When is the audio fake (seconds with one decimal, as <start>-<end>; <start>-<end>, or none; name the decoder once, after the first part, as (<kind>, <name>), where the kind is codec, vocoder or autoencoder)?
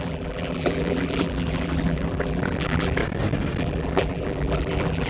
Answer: 0.0-3.0 (vocoder, BigVGAN v2); 3.6-5.1